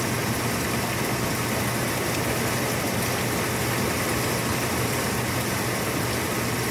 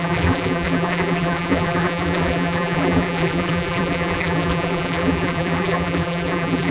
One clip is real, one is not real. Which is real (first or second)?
first